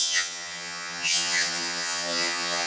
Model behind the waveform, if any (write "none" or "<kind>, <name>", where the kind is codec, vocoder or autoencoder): vocoder, HiFi-GAN